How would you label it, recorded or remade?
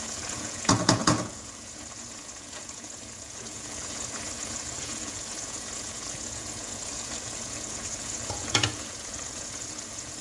remade